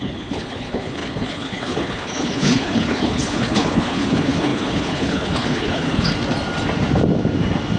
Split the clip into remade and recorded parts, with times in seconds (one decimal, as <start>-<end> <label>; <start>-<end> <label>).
0.0-6.1 remade; 6.1-7.8 recorded